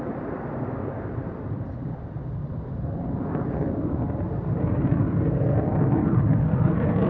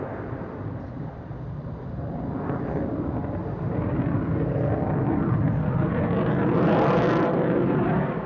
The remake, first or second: first